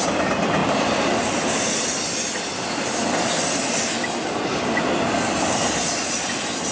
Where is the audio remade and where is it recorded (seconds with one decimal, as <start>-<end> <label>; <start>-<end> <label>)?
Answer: 0.0-6.7 recorded